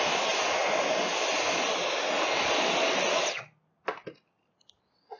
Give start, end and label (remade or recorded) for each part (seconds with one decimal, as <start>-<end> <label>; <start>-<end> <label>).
0.0-5.2 recorded